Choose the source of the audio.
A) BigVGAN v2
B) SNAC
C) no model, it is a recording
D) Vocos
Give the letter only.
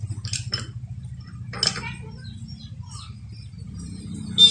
C